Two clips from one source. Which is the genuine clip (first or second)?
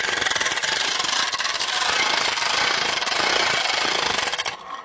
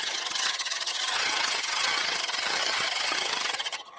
first